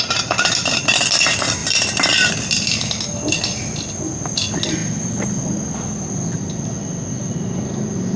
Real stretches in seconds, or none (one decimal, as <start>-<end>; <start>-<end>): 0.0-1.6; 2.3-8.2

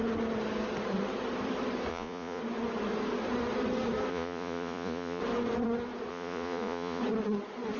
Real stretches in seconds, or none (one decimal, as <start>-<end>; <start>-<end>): 0.0-1.9; 2.4-4.1; 5.2-6.1; 7.0-7.8

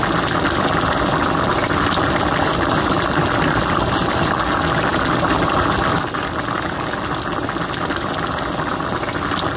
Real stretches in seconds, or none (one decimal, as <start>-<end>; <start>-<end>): 0.0-9.6

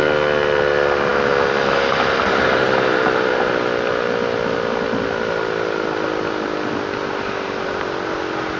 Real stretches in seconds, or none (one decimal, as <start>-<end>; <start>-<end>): 0.0-8.6

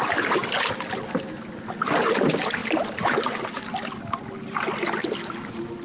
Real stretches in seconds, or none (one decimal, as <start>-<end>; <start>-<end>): 0.0-5.8